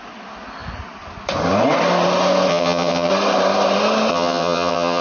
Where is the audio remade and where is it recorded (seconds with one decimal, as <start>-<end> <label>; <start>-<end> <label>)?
0.0-2.5 recorded; 2.5-3.1 remade; 3.1-4.1 recorded; 4.1-5.0 remade